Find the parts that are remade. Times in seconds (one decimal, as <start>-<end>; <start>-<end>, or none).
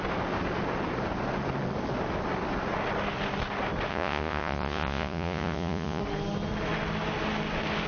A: 3.9-6.0